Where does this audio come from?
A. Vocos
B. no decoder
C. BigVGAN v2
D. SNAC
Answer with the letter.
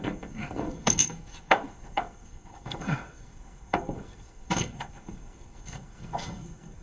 D